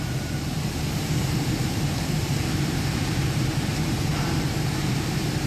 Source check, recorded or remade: remade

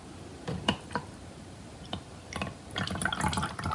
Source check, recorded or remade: remade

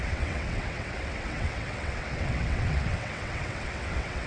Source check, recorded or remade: remade